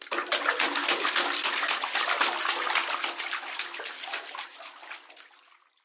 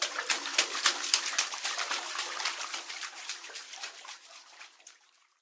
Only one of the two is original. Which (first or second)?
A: first